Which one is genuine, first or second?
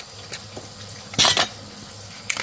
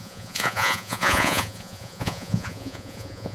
first